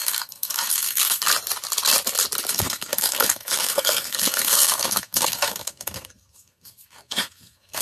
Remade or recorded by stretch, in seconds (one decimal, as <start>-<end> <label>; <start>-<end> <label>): 0.0-1.3 remade; 1.3-2.5 recorded; 2.5-7.8 remade